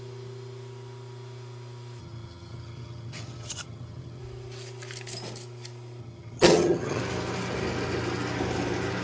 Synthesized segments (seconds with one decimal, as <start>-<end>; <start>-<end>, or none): 2.0-4.2; 6.0-7.0